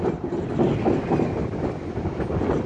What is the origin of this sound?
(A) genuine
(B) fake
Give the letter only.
A